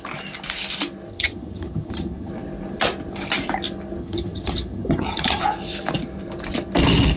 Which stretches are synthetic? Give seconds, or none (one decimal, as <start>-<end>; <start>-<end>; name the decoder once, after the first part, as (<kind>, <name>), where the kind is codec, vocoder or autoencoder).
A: 1.1-2.3 (vocoder, HiFi-GAN); 4.0-5.4

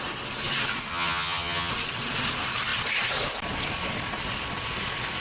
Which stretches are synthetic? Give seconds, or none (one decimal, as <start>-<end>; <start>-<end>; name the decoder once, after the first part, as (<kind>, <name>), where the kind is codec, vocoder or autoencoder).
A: 0.9-1.7 (vocoder, HiFi-GAN)

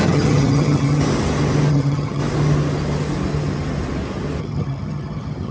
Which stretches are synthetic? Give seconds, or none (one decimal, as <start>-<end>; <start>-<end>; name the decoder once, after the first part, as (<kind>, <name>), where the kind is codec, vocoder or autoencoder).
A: 0.0-1.0 (vocoder, HiFi-GAN); 1.7-2.2; 4.4-5.5

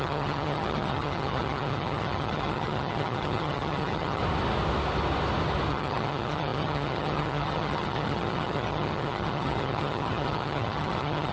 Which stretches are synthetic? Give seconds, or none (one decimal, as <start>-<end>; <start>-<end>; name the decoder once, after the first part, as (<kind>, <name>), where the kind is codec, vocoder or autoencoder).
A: 0.0-4.2 (vocoder, HiFi-GAN); 5.7-11.3